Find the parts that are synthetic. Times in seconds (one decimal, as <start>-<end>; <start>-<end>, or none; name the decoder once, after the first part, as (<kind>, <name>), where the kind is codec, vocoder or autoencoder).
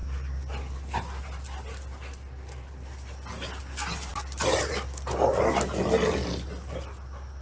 none